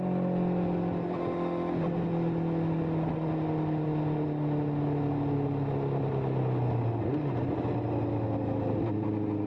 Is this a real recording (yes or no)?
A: yes